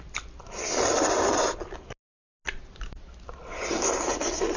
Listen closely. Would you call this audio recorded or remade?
recorded